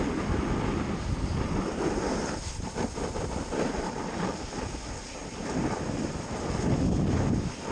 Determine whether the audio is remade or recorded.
recorded